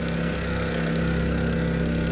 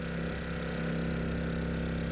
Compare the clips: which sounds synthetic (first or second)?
first